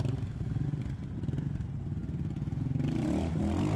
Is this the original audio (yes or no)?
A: yes